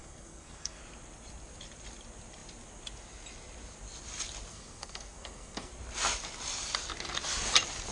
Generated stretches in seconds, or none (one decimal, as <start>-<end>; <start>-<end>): 0.0-0.8; 4.5-5.7